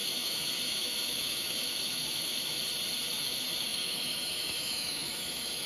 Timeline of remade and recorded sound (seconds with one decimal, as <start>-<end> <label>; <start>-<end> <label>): 0.0-2.6 remade; 2.6-3.2 recorded; 3.2-5.7 remade